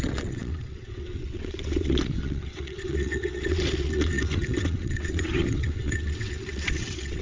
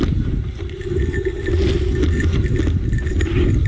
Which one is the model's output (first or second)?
first